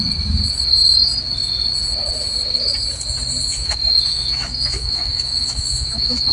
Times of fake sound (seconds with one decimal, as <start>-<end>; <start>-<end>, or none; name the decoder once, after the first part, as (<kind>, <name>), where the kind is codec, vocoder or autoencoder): 3.5-6.3 (autoencoder, DAC-VAE)